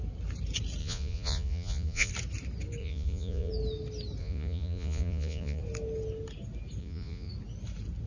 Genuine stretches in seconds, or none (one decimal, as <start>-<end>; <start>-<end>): 0.0-0.8; 2.1-2.8; 3.5-4.2; 5.6-6.8; 7.3-8.1